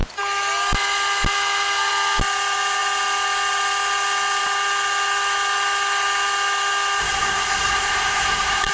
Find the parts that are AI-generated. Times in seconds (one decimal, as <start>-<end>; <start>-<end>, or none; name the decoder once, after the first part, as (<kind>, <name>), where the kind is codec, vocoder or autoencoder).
7.0-8.7 (codec, SNAC)